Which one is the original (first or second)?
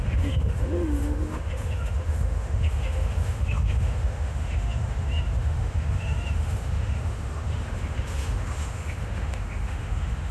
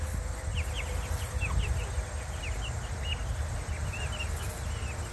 second